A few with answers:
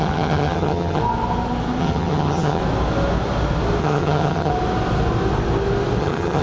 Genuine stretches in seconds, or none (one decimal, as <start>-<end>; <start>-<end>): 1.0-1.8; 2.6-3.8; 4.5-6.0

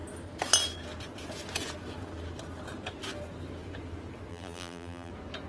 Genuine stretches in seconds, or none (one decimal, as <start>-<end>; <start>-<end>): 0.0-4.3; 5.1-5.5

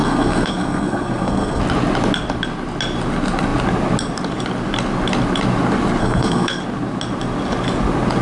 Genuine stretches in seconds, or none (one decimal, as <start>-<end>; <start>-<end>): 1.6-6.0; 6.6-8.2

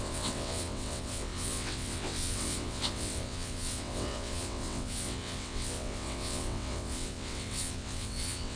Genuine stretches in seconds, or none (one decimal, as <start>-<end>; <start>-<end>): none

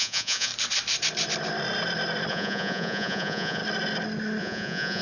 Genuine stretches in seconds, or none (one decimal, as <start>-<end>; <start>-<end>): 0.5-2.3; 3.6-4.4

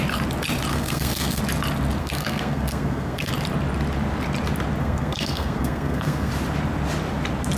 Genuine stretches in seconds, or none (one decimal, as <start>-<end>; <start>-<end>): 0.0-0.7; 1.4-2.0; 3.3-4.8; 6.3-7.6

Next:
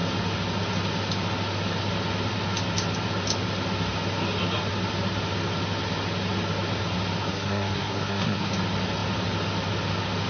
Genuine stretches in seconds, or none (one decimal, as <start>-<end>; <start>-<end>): 0.0-7.3; 8.5-10.3

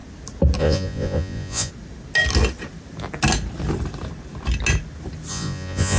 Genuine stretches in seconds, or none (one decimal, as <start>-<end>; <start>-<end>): 0.0-0.6; 1.7-5.3